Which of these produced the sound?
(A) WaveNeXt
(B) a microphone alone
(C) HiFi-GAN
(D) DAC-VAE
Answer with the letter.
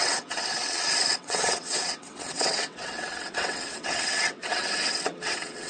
A